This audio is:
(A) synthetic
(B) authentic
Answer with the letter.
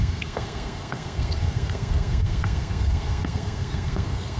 A